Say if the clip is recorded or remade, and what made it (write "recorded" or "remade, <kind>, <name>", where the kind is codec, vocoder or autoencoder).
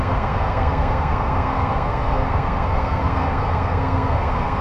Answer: remade, codec, SNAC